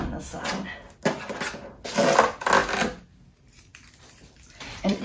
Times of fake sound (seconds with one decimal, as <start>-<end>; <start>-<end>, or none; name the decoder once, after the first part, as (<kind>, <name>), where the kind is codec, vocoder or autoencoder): 3.7-5.0 (vocoder, BigVGAN v2)